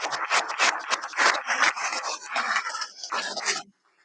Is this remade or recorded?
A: recorded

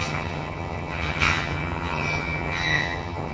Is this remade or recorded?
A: remade